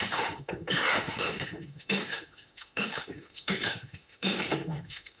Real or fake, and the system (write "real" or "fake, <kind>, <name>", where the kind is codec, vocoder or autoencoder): fake, autoencoder, DAC-VAE